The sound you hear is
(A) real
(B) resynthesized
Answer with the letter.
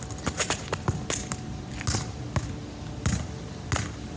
A